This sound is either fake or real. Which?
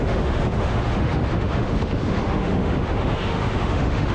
fake